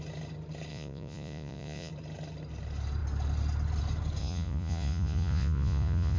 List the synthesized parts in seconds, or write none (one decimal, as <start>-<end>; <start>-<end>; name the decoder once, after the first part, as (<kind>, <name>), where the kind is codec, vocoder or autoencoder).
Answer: 0.7-1.9 (vocoder, Vocos); 4.2-6.2